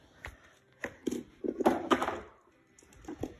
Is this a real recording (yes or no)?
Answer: yes